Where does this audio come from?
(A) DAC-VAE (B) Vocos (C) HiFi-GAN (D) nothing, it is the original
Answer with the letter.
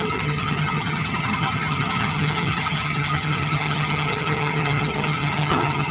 C